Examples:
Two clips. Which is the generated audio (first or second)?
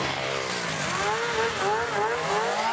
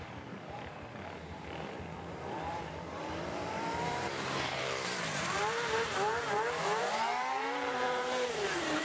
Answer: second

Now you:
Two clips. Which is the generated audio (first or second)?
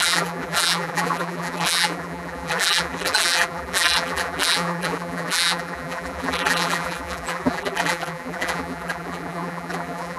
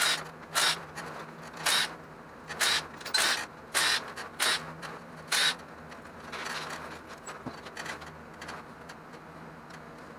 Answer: first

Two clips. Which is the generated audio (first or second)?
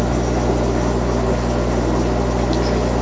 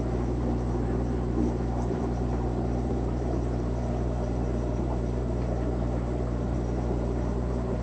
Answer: second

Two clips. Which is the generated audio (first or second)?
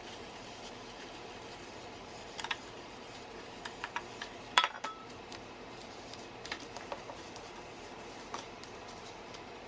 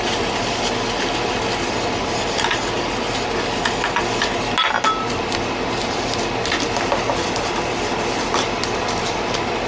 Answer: first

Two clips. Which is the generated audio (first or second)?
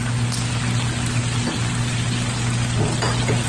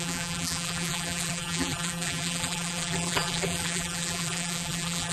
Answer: second